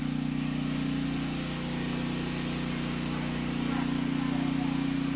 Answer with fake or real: real